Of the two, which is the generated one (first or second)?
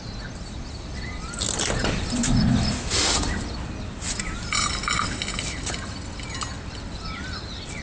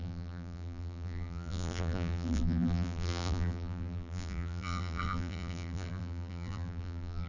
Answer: second